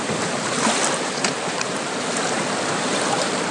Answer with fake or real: real